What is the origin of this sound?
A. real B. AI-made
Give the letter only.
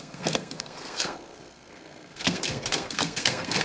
B